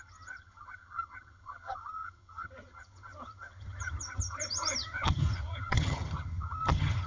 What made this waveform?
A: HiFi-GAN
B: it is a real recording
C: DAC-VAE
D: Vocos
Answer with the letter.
A